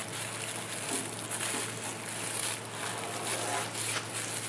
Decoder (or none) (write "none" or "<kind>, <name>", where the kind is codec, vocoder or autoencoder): none